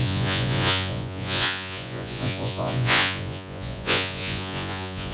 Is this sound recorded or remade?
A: remade